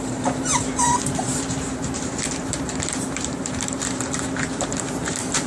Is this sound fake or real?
fake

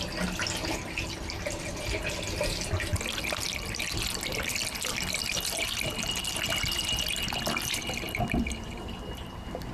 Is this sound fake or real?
real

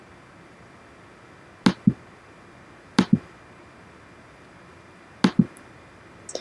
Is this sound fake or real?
real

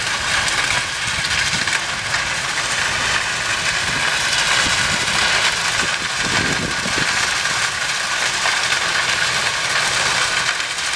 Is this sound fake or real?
real